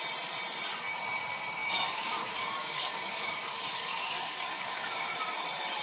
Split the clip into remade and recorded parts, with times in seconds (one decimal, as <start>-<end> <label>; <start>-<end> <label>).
0.0-1.6 recorded; 1.6-5.1 remade; 5.1-5.8 recorded